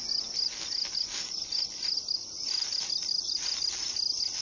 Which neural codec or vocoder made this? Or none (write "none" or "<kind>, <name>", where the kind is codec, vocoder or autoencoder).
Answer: none